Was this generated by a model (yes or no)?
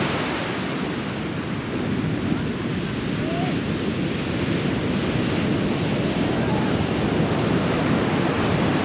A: no